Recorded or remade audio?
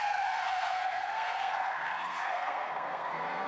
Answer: remade